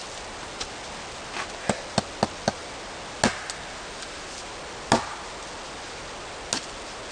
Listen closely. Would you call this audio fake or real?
real